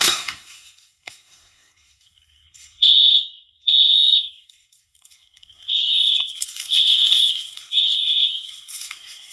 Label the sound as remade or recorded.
remade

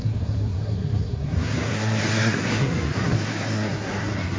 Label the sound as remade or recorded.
remade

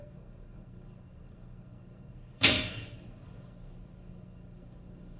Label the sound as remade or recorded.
remade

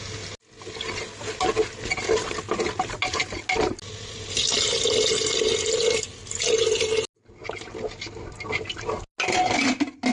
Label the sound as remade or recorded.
recorded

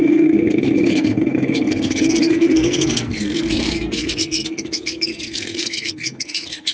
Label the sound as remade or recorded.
remade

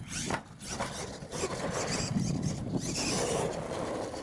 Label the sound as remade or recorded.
recorded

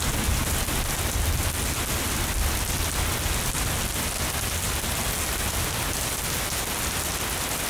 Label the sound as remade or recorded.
recorded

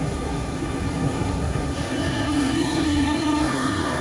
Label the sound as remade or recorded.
remade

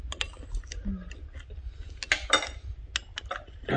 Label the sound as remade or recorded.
recorded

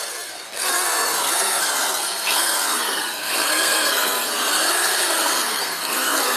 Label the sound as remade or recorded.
remade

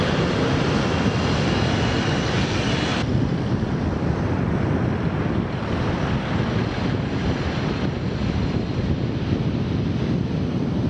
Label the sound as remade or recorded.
recorded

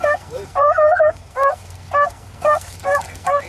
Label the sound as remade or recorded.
remade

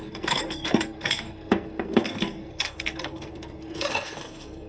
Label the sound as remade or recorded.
remade